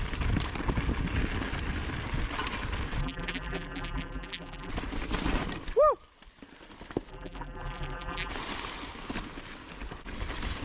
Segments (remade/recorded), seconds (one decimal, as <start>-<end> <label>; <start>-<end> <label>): 0.0-3.0 recorded; 3.0-4.7 remade; 4.7-7.1 recorded; 7.1-8.3 remade; 8.3-10.6 recorded